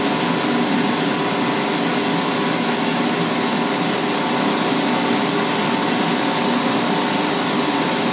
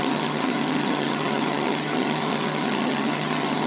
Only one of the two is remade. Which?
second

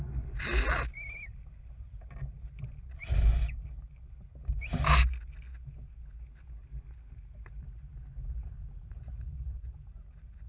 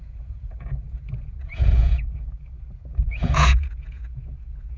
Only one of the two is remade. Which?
second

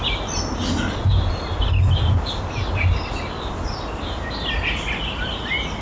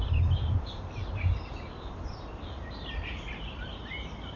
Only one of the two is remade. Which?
second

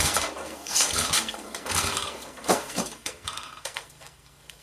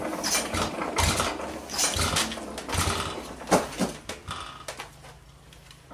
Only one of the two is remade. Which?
first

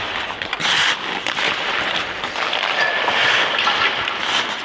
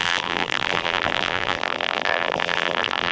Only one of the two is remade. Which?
second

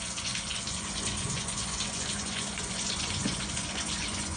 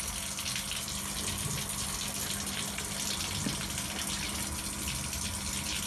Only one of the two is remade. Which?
first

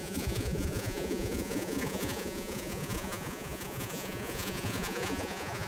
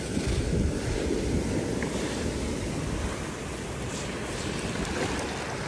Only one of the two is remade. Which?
first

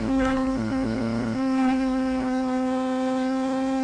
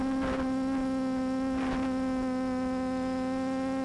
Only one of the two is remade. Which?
first